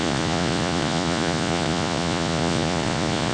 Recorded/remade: remade